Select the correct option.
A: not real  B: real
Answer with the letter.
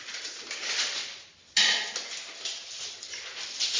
B